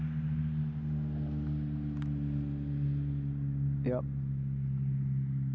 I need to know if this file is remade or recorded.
recorded